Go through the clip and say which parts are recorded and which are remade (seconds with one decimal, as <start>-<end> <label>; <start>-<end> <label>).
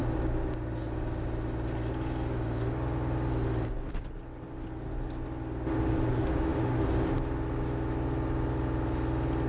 0.0-9.5 recorded